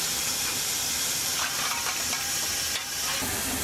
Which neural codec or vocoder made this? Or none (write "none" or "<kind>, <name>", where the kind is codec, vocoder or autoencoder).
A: none